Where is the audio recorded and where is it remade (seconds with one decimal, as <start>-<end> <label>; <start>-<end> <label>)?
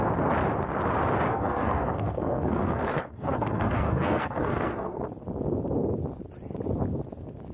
0.0-1.3 recorded; 1.3-5.0 remade; 5.0-7.5 recorded